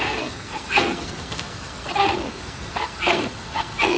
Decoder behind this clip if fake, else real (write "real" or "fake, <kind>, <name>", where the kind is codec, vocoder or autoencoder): fake, codec, SNAC